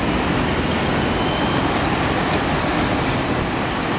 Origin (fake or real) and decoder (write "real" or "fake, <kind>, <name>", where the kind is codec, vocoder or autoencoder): real